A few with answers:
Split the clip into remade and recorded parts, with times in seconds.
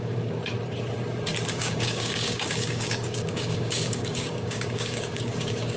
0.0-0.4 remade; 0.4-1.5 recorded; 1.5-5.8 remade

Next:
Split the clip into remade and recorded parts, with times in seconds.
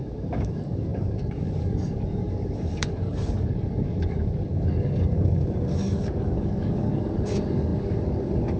0.0-8.6 remade